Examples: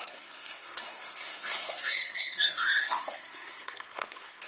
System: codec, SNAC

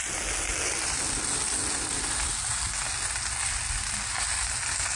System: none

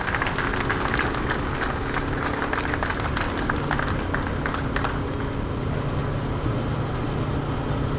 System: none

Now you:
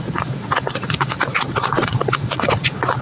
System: vocoder, Vocos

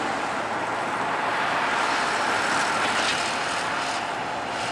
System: none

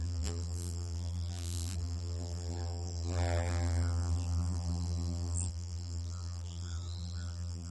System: vocoder, BigVGAN v2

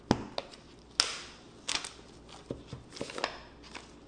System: none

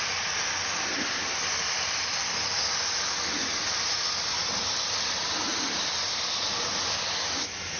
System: none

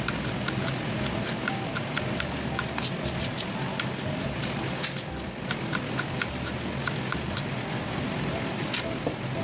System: none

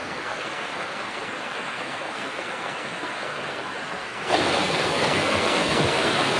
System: codec, SNAC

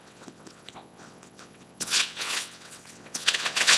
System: vocoder, WaveNeXt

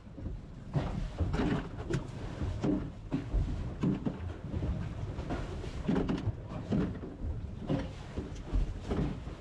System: none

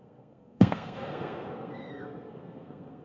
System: codec, SNAC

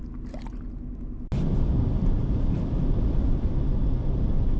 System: none